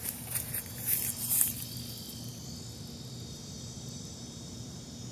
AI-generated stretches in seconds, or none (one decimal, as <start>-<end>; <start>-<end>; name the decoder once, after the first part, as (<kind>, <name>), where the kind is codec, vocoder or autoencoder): 0.0-0.9 (vocoder, BigVGAN v2); 3.3-5.1